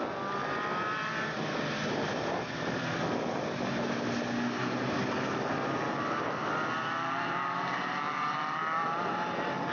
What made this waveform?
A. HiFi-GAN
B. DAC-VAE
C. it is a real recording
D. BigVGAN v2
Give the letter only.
C